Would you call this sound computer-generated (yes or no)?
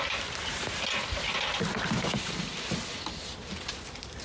no